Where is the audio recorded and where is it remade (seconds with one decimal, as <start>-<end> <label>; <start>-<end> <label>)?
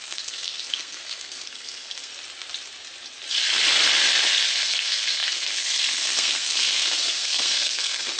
0.0-2.1 remade; 2.1-4.5 recorded; 4.5-8.2 remade